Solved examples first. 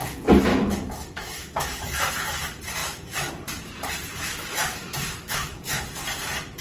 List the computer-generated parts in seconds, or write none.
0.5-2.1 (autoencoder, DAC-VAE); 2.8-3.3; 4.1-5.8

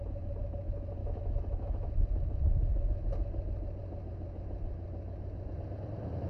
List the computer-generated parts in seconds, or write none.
1.0-1.9 (autoencoder, DAC-VAE)

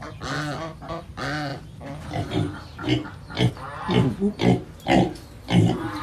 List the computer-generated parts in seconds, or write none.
none

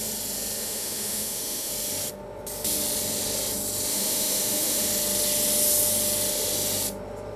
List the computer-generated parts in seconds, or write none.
0.6-1.7 (autoencoder, DAC-VAE); 3.9-4.9